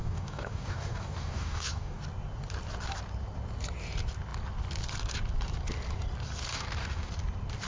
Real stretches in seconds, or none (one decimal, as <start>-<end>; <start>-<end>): 2.0-6.5; 7.1-7.7